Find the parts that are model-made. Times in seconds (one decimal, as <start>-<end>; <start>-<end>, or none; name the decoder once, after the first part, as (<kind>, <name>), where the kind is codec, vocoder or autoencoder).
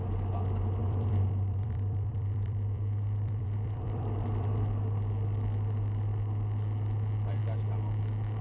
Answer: 0.8-4.6 (vocoder, BigVGAN v2)